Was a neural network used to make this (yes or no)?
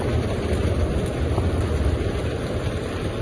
no